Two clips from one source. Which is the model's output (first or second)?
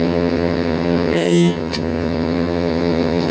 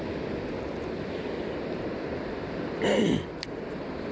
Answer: first